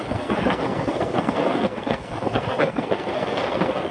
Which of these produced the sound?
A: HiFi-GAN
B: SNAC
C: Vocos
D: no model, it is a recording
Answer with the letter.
B